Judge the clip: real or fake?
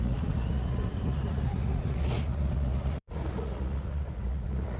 fake